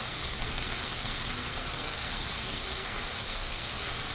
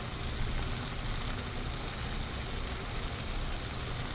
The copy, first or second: first